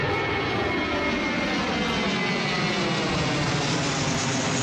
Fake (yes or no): no